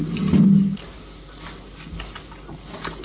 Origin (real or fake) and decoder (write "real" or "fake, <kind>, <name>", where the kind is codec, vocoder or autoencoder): real